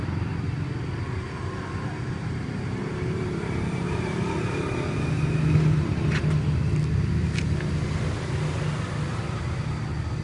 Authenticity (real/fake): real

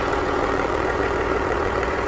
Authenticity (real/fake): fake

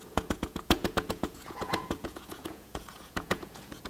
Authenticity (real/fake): fake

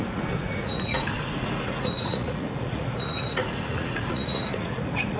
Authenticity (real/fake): fake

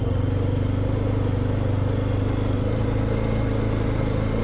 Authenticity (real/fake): real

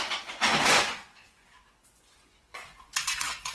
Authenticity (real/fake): fake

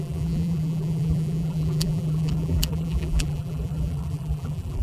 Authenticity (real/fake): fake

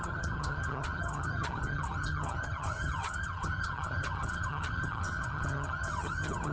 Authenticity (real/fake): fake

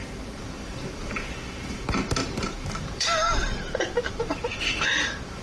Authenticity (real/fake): fake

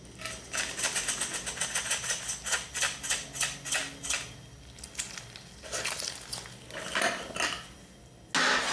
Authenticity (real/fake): real